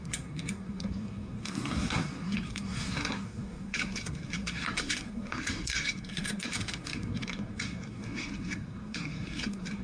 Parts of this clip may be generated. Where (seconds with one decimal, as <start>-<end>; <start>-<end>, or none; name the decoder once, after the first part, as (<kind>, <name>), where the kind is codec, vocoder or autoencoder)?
0.0-9.8 (codec, SNAC)

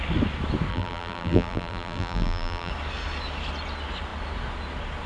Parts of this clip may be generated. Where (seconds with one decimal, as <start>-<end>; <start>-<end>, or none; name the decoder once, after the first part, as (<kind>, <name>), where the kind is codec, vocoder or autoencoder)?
0.7-2.7 (vocoder, BigVGAN v2)

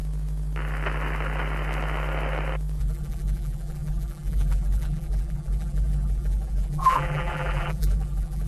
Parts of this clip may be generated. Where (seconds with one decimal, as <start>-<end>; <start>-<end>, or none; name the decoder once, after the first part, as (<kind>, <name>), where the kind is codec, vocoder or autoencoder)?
2.8-8.5 (vocoder, BigVGAN v2)

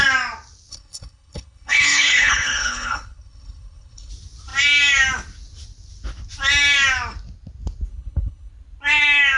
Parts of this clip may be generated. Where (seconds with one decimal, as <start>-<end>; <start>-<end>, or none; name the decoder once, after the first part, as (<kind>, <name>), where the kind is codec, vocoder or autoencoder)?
0.7-4.1 (codec, HILCodec); 7.9-8.5

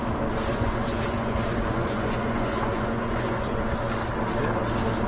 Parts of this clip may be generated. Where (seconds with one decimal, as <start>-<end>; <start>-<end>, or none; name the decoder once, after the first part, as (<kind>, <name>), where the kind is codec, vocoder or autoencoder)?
0.5-3.6 (vocoder, Vocos)

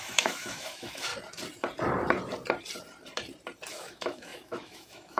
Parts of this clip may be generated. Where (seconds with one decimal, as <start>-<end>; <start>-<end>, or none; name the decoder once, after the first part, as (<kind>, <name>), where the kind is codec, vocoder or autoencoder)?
0.0-1.1 (autoencoder, DAC-VAE); 3.7-5.2